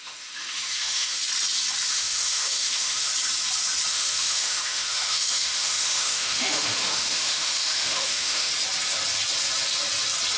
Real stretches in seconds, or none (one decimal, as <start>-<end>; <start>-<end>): 1.2-1.9; 3.1-3.9; 8.5-10.4